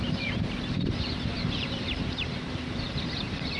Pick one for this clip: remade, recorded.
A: remade